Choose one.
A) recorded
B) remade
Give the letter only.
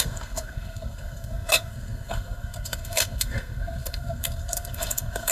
B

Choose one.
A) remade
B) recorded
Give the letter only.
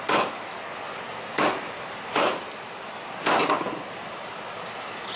B